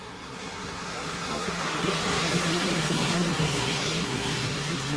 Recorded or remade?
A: remade